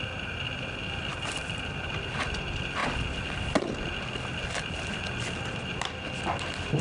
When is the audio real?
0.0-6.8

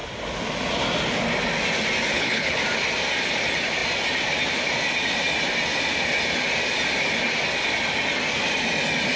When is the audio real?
0.0-2.1; 2.6-9.2

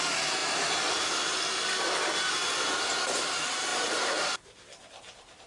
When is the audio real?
0.0-3.7

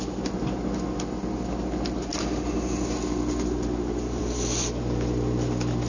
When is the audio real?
0.0-5.9

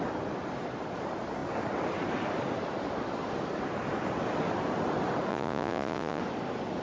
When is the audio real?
0.0-5.3; 6.2-6.8